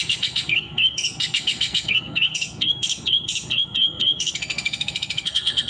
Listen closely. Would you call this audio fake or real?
fake